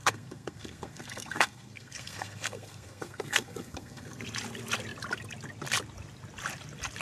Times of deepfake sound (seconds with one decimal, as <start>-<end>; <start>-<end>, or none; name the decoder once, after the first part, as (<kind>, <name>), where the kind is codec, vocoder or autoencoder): 0.0-4.2 (codec, SNAC)